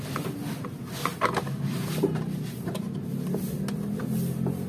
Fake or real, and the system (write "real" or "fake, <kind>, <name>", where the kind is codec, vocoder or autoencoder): real